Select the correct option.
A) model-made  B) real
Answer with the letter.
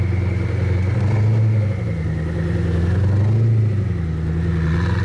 B